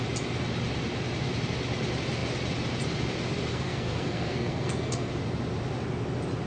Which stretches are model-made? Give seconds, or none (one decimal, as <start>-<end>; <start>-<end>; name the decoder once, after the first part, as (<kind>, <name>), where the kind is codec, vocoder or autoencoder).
3.5-5.1 (codec, SNAC)